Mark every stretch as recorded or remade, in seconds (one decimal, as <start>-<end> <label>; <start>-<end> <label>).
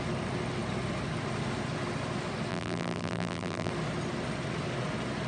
0.0-2.5 recorded; 2.5-3.7 remade; 3.7-5.3 recorded